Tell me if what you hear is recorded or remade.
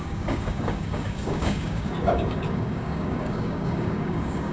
remade